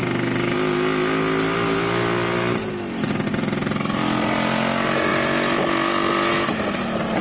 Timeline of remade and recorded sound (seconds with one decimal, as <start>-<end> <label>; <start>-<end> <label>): 0.0-7.2 recorded